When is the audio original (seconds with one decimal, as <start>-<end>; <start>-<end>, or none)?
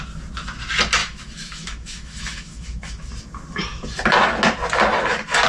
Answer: 0.0-1.0; 3.1-5.5